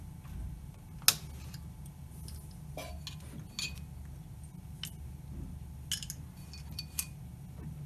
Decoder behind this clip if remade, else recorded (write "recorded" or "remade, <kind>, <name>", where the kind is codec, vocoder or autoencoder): recorded